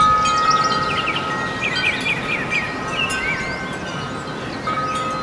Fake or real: real